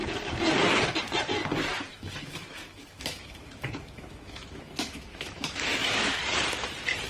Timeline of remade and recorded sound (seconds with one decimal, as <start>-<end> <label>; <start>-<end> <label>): 0.0-1.9 recorded; 1.9-6.2 remade; 6.2-7.1 recorded